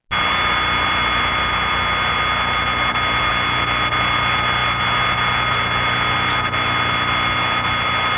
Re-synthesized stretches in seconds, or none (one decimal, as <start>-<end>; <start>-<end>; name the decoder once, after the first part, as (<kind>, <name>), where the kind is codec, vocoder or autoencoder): none